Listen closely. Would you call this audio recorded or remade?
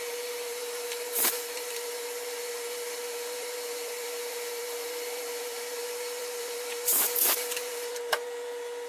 remade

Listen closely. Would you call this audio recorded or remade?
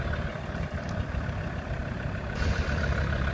remade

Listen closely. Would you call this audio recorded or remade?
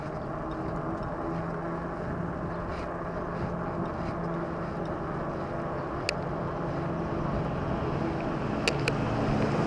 recorded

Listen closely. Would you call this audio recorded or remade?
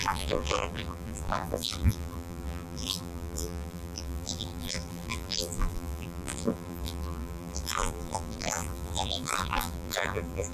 remade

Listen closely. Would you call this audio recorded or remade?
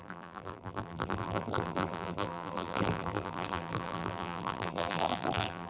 remade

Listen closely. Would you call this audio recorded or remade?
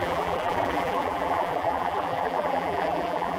remade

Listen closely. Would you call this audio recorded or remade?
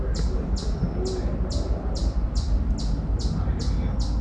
recorded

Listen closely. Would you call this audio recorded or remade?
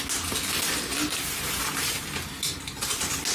recorded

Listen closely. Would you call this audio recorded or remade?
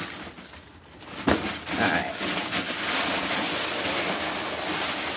recorded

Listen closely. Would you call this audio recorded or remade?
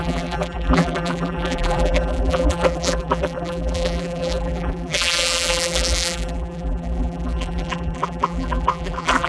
remade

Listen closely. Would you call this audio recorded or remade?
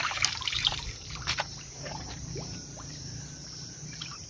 remade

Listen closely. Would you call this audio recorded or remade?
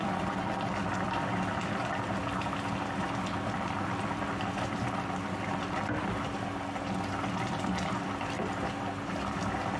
recorded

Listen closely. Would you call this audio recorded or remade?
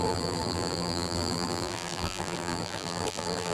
remade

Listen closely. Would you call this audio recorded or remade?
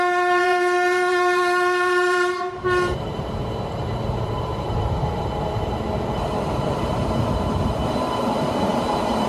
remade